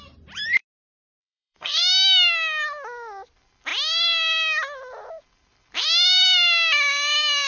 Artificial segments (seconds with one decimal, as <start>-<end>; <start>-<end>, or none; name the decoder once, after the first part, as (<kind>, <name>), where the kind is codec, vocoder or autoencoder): 1.2-1.8 (codec, SNAC)